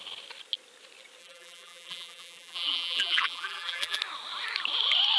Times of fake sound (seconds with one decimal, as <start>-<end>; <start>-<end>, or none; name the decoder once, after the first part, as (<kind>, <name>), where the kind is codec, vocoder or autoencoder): 1.2-4.0 (vocoder, BigVGAN v2)

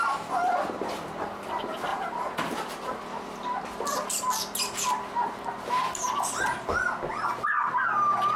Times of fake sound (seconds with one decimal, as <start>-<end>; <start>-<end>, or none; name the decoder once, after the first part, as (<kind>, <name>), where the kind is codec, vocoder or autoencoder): 1.9-3.0 (vocoder, BigVGAN v2)